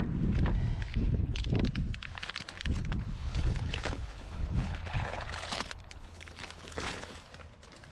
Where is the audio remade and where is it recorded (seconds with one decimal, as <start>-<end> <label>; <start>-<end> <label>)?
0.0-0.9 recorded; 0.9-1.5 remade; 1.5-2.8 recorded; 2.8-7.3 remade; 7.3-7.9 recorded